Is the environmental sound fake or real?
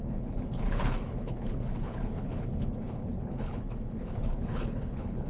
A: fake